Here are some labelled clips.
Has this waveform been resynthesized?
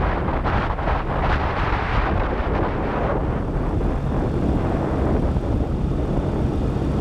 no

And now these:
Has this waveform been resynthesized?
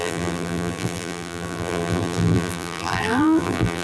yes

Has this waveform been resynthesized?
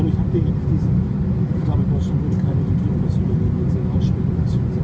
no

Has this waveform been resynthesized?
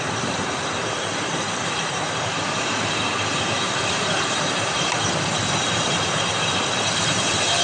yes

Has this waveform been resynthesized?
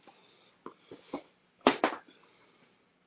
no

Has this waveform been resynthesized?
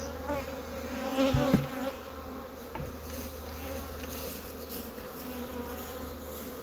no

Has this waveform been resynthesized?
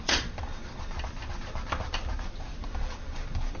yes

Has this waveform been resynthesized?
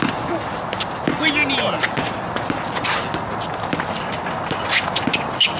no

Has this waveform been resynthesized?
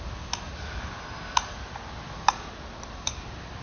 no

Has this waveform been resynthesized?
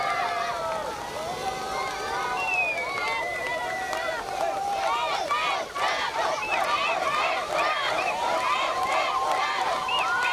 yes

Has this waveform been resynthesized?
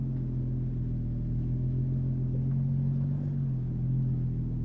no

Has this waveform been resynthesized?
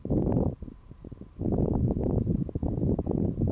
yes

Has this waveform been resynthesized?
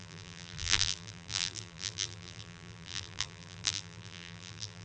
yes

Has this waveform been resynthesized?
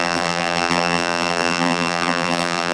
yes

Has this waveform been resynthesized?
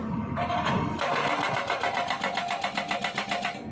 no